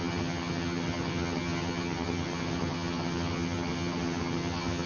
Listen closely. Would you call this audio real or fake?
fake